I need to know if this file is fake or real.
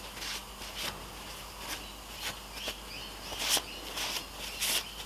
real